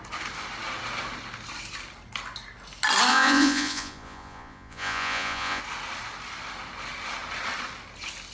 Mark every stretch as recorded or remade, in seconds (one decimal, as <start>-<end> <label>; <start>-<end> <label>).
0.0-3.1 recorded; 3.1-5.6 remade; 5.6-8.3 recorded